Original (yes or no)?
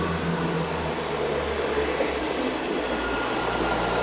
yes